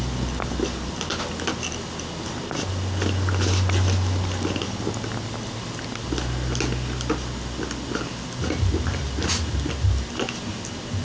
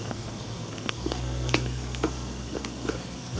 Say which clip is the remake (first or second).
second